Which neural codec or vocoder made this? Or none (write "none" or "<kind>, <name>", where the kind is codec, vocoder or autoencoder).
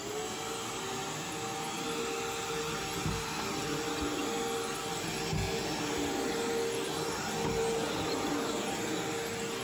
none